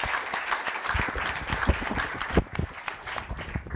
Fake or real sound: real